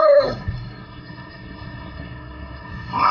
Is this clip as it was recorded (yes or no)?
no